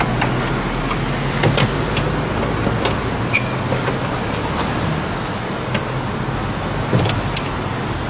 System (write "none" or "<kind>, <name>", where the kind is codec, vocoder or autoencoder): none